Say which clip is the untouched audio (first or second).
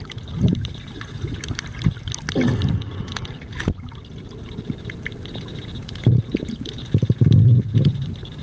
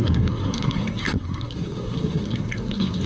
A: first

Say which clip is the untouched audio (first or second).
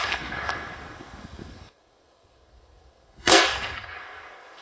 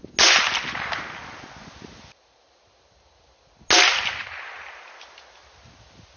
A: second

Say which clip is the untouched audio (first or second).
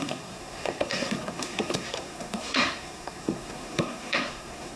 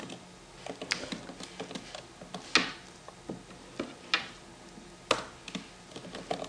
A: second